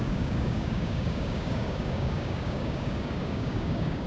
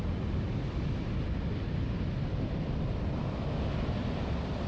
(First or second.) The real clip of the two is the second